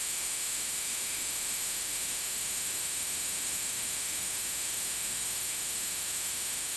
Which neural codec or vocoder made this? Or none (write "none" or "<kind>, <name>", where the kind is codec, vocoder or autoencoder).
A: autoencoder, DAC-VAE